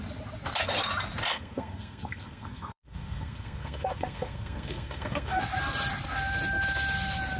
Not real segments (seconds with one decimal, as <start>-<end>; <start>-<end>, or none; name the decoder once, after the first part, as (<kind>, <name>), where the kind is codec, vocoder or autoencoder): 1.3-5.4 (codec, SNAC)